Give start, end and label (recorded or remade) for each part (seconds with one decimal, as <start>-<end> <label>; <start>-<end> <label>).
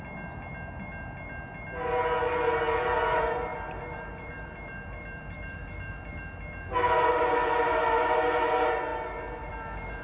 0.0-3.5 recorded; 3.5-6.2 remade; 6.2-10.0 recorded